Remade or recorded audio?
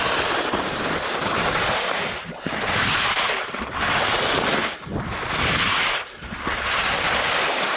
recorded